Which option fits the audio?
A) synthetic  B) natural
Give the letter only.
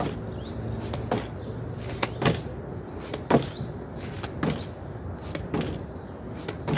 B